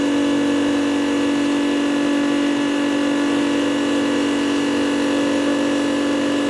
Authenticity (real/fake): real